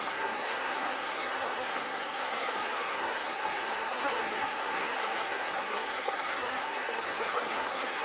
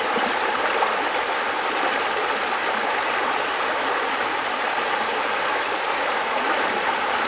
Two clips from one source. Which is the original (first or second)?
second